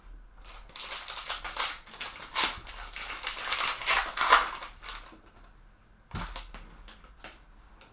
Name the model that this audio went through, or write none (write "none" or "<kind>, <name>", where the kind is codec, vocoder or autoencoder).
none